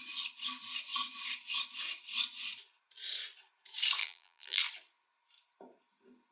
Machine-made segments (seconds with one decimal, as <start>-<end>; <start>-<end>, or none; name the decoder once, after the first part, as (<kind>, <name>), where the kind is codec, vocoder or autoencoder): 4.0-4.6 (vocoder, BigVGAN v2)